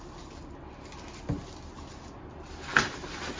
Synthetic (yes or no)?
no